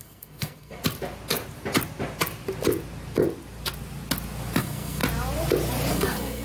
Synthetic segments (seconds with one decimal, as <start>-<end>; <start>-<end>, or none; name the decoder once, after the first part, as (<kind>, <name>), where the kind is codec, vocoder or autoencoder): 0.0-0.8 (codec, SNAC); 4.6-5.0; 5.9-6.4